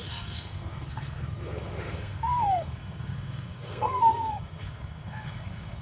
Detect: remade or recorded remade